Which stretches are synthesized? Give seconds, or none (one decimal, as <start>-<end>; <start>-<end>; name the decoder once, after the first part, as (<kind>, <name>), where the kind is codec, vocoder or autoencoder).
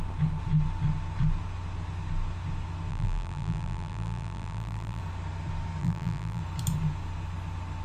2.9-5.0 (vocoder, BigVGAN v2); 5.8-6.4